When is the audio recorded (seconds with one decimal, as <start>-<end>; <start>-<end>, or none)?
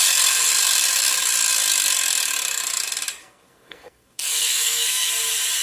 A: 0.0-3.2; 5.1-5.6